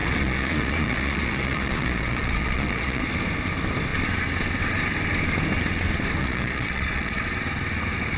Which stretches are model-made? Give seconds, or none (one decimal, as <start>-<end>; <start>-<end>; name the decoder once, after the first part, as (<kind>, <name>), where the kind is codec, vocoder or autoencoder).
0.0-3.0 (vocoder, Vocos); 6.2-7.2